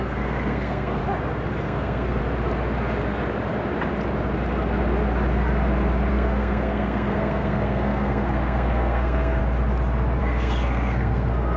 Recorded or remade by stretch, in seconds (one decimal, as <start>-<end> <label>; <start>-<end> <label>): 0.0-1.0 remade; 1.0-1.6 recorded; 1.6-2.2 remade; 2.2-6.1 recorded; 6.1-9.4 remade; 9.4-10.2 recorded; 10.2-11.6 remade